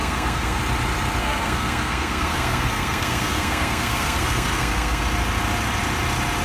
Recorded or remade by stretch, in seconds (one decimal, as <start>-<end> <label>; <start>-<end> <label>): 0.0-0.6 remade; 0.6-1.2 recorded; 1.2-5.0 remade; 5.0-6.4 recorded